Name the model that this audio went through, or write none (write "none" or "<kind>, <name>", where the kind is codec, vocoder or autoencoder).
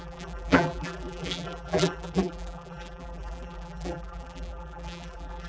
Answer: vocoder, BigVGAN v2